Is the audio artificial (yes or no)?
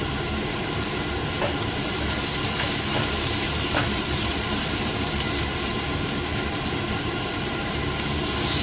yes